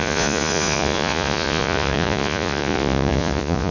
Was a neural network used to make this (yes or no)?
yes